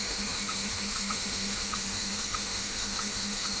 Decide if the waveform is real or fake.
fake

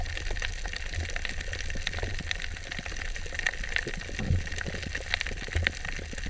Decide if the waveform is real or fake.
real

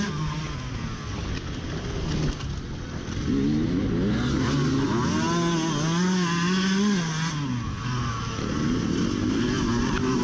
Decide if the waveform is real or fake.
real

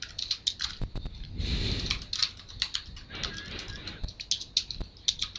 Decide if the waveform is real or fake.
real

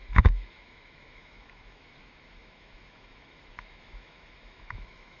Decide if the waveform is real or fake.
fake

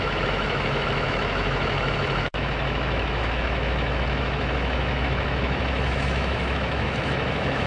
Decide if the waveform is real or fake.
fake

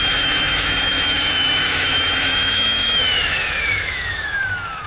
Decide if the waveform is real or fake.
fake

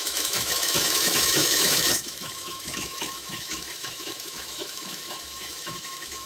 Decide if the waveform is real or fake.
fake